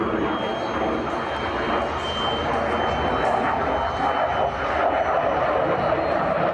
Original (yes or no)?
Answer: yes